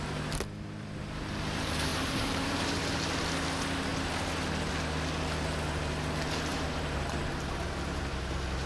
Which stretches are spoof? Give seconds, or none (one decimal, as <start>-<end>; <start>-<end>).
1.9-2.8; 6.5-7.2

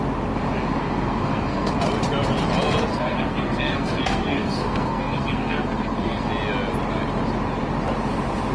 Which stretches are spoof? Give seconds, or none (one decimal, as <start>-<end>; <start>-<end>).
0.8-1.7; 2.9-6.3

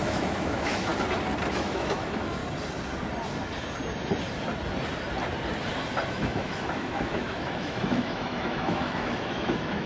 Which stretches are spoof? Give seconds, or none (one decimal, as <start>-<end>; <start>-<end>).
0.0-0.9; 1.5-2.4; 6.1-9.9

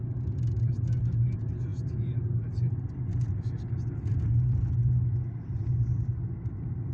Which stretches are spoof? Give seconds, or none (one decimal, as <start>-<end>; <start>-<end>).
none

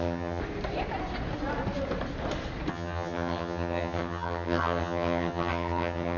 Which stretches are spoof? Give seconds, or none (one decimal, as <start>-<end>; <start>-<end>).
0.0-0.4; 2.7-6.2

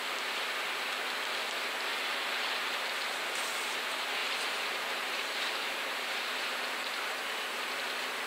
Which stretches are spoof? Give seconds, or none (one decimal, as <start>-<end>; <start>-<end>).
4.2-7.3

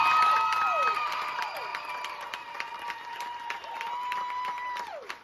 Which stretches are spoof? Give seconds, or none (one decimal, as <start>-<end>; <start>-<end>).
1.7-2.5